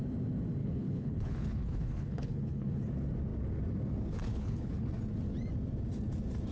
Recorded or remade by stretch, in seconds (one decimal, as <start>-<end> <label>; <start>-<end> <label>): 0.0-0.6 recorded; 0.6-2.8 remade; 2.8-4.3 recorded; 4.3-4.9 remade; 4.9-6.5 recorded